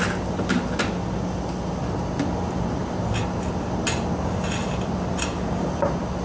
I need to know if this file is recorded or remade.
recorded